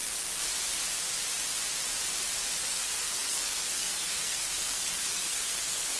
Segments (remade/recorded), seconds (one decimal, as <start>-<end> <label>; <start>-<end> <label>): 0.0-2.6 recorded; 2.6-6.0 remade